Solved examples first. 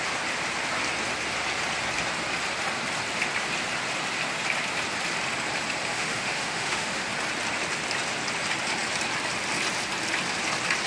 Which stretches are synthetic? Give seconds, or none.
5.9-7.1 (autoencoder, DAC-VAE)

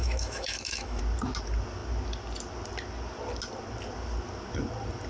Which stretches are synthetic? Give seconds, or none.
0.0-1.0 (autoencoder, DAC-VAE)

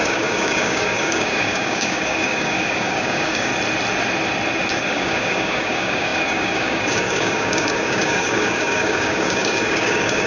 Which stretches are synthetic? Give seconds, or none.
0.0-3.5 (codec, DAC); 4.9-10.3